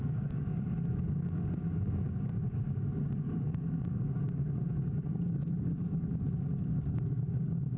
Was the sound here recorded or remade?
remade